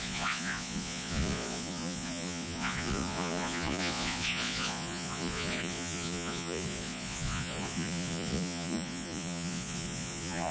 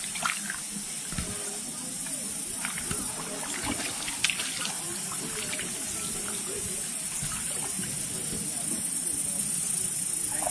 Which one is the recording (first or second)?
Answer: second